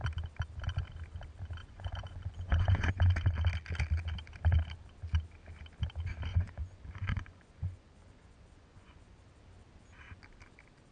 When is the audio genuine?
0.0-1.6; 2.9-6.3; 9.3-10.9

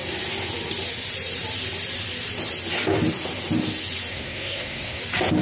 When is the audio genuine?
0.0-4.1; 5.0-5.4

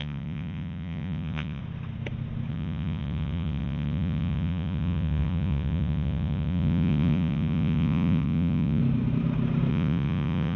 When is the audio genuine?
1.6-2.5; 8.8-9.7

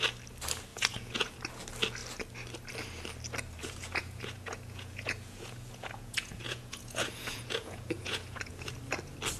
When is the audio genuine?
0.0-0.7; 1.3-3.6; 8.7-9.4

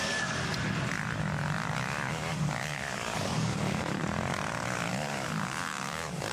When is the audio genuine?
0.5-2.1; 4.0-4.9

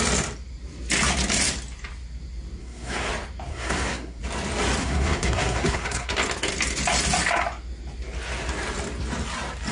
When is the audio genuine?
0.0-2.6; 3.1-3.5; 4.2-4.8; 6.1-9.7

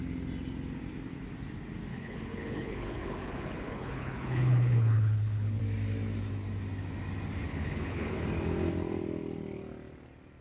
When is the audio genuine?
0.0-1.9; 5.6-7.4; 8.2-10.4

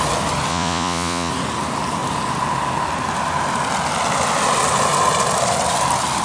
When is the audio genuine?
0.0-0.5; 1.3-6.2